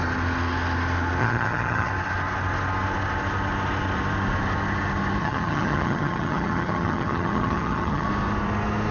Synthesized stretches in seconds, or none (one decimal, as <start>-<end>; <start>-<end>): 1.2-1.9; 5.2-8.1